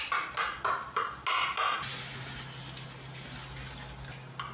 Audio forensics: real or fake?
real